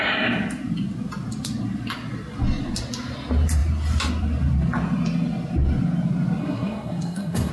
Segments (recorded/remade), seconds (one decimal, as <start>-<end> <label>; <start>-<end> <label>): 0.0-6.4 recorded; 6.4-7.5 remade